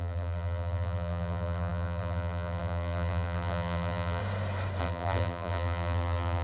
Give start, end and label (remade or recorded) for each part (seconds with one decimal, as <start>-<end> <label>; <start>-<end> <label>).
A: 0.0-4.2 remade; 4.2-4.8 recorded; 4.8-6.4 remade